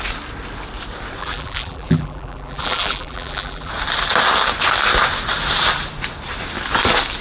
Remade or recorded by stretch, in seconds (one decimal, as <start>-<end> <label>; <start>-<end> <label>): 0.0-1.2 recorded; 1.2-3.7 remade; 3.7-7.2 recorded

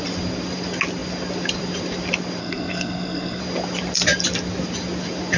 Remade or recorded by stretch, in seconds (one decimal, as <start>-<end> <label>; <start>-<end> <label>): 0.0-2.4 recorded; 2.4-3.4 remade; 3.4-5.4 recorded

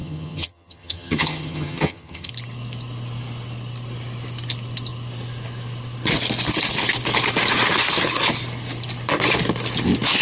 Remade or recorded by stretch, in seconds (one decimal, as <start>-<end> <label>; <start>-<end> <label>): 0.0-2.3 remade; 2.3-10.2 recorded

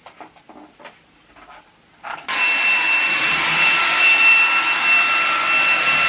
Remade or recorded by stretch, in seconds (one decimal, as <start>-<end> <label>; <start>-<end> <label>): 0.0-3.2 recorded; 3.2-3.8 remade; 3.8-6.1 recorded

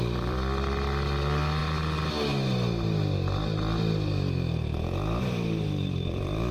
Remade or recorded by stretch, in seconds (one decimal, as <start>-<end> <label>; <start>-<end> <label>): 0.0-1.6 remade; 1.6-5.2 recorded; 5.2-6.5 remade

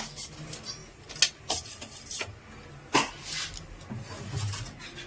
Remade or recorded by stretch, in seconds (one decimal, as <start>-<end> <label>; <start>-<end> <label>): 0.0-5.1 recorded

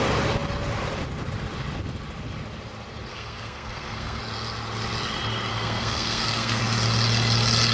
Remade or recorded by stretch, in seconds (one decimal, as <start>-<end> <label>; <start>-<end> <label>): 0.0-3.1 recorded; 3.1-4.2 remade; 4.2-5.5 recorded; 5.5-6.6 remade; 6.6-7.7 recorded